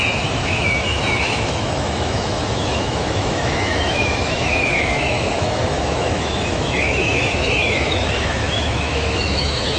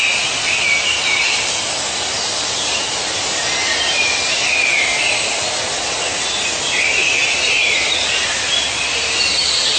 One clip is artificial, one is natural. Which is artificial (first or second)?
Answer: first